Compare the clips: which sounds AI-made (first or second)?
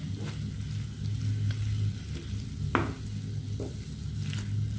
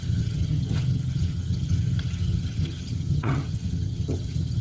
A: second